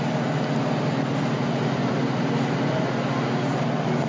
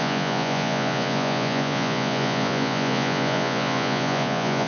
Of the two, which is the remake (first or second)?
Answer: second